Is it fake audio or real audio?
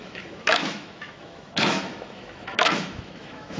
fake